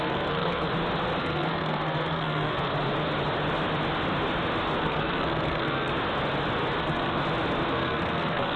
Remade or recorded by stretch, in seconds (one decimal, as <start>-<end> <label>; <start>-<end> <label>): 0.0-0.7 remade; 0.7-1.2 recorded; 1.2-2.7 remade; 2.7-4.8 recorded; 4.8-5.9 remade; 5.9-6.8 recorded; 6.8-7.2 remade; 7.2-7.7 recorded; 7.7-8.6 remade